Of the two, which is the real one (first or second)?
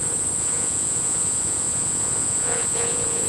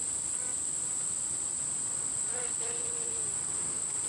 second